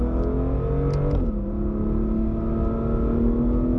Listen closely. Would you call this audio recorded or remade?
recorded